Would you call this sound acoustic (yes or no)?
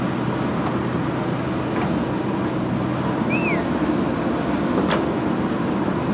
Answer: yes